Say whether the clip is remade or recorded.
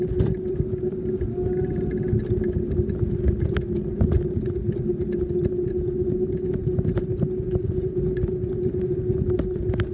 recorded